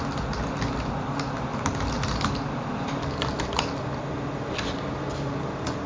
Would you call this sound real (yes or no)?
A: yes